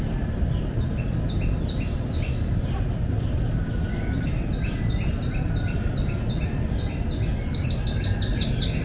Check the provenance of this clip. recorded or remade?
recorded